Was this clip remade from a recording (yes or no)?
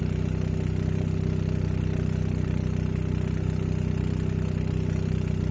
no